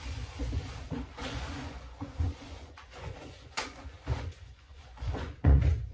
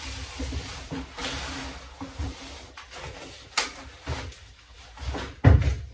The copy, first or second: first